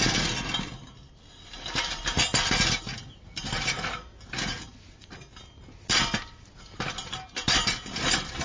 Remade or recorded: recorded